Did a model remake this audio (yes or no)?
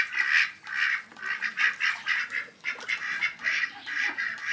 no